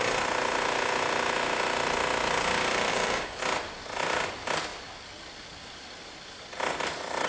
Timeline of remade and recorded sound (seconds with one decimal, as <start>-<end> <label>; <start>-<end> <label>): 0.0-2.9 recorded; 2.9-3.4 remade; 3.4-7.3 recorded